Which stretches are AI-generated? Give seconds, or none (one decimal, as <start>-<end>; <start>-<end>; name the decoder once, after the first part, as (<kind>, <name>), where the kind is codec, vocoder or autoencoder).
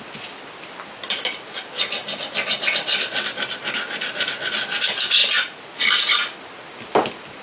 none